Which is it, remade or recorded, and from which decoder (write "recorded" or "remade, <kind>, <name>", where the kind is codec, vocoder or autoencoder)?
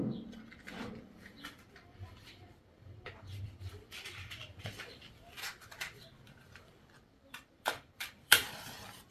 remade, vocoder, BigVGAN v2